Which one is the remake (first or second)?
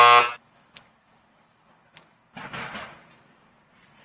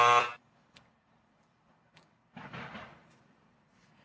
second